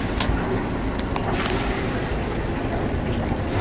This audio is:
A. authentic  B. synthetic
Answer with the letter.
A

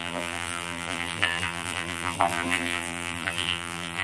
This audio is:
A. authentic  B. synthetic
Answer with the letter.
B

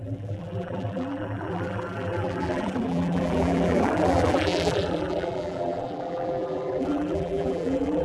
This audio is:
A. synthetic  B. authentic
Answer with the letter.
A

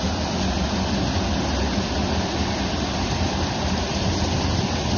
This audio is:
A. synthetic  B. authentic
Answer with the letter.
B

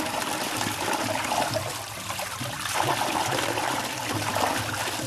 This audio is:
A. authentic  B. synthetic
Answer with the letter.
B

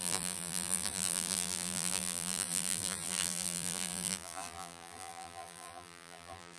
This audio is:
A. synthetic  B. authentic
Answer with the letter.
A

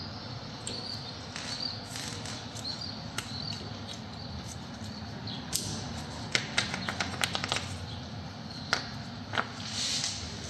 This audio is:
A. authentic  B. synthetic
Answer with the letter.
A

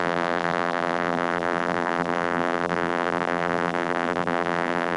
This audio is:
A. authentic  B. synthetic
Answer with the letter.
B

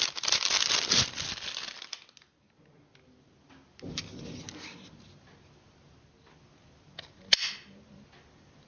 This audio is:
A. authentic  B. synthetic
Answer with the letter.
A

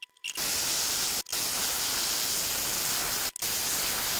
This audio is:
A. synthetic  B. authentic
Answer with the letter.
B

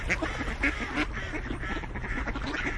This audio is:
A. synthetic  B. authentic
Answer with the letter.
B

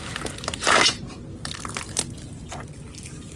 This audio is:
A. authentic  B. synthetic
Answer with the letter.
A